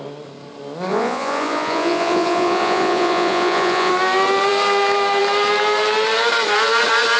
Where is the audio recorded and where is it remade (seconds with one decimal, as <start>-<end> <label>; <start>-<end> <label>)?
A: 0.0-0.9 recorded; 0.9-3.9 remade; 3.9-7.2 recorded